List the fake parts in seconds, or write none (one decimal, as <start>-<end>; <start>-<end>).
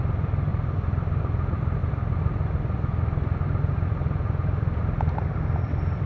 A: 0.5-1.2